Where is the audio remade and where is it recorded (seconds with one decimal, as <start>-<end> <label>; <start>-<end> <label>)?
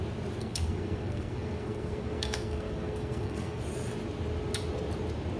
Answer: 0.0-0.4 recorded; 0.4-3.6 remade; 3.6-5.4 recorded